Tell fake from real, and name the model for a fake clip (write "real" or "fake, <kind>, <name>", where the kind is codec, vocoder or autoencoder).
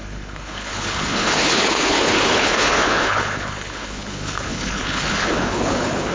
fake, codec, HILCodec